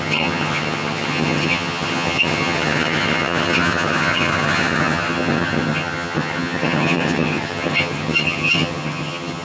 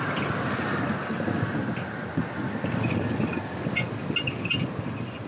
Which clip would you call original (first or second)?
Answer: second